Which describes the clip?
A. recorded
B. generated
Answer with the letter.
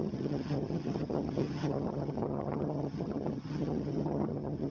B